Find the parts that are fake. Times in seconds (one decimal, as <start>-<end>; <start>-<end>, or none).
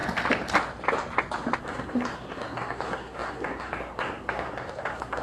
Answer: 1.6-5.2